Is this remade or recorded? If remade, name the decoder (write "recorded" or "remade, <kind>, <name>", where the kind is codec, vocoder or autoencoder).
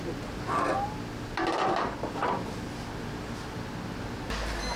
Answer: recorded